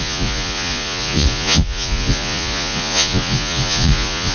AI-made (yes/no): yes